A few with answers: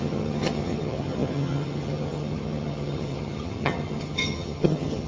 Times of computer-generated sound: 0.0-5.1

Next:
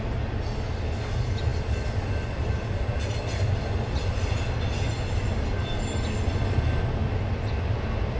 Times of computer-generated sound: none